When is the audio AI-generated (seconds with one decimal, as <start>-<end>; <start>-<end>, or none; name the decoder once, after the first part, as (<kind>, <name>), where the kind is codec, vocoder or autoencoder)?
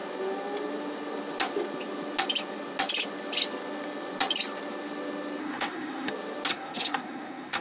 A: 5.4-6.1 (codec, SNAC); 6.5-7.6